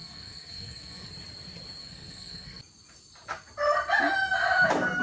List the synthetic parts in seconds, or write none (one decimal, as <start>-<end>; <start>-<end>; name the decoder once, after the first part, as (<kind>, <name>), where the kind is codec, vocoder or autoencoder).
0.0-1.1 (codec, SNAC); 1.8-2.6

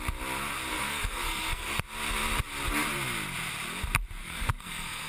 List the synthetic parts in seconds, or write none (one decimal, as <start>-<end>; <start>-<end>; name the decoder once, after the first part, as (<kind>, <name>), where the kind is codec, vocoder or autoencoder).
0.7-1.8 (codec, SNAC); 4.2-5.1

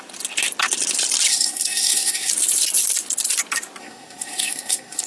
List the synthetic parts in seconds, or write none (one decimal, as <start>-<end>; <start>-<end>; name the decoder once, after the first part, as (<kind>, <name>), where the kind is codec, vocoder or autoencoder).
1.3-2.3 (codec, SNAC); 3.8-5.1

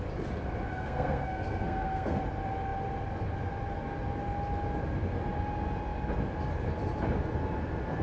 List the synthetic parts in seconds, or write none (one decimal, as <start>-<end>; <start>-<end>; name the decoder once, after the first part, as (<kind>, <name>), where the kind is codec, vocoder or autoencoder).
0.7-2.2 (codec, SNAC)